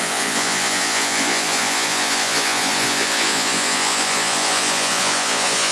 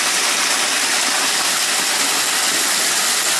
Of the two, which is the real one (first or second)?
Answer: second